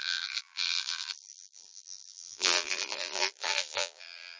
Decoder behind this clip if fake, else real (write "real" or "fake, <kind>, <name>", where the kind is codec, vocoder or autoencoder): fake, vocoder, BigVGAN v2